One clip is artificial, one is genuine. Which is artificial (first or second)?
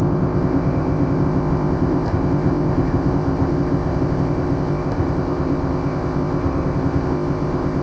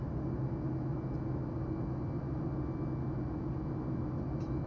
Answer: first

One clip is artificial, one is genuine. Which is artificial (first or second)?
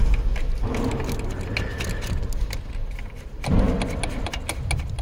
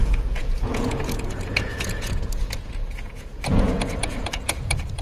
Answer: second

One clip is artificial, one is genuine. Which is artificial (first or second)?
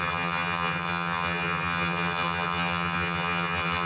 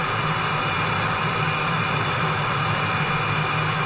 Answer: first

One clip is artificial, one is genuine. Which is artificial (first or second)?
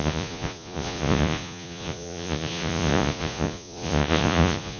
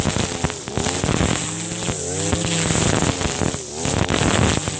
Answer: first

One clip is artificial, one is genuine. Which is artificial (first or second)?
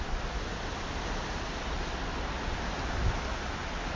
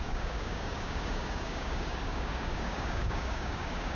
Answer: second